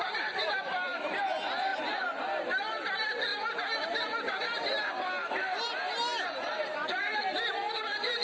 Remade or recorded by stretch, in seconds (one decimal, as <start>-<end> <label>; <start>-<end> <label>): 0.0-1.7 remade; 1.7-2.4 recorded; 2.4-3.3 remade; 3.3-5.3 recorded; 5.3-8.2 remade